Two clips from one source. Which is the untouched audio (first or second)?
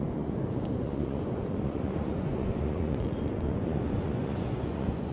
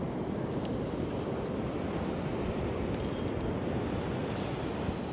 second